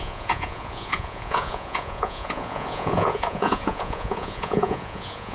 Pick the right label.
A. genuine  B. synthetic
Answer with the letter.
B